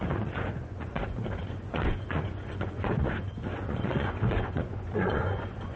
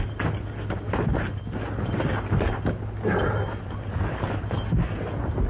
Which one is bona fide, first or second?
second